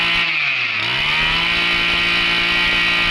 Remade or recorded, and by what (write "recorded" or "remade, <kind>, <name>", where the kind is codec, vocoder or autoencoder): recorded